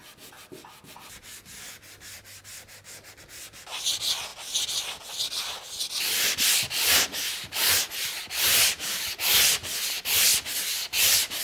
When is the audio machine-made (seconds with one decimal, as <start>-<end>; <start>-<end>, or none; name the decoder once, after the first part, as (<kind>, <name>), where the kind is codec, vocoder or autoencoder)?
none